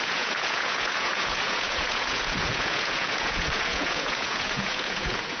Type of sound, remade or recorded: remade